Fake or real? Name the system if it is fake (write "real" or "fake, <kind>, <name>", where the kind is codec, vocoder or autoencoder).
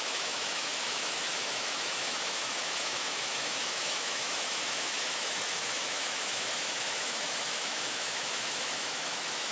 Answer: fake, autoencoder, DAC-VAE